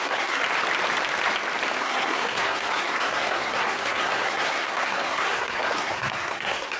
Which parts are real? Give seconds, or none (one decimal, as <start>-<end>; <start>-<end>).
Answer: 0.4-1.8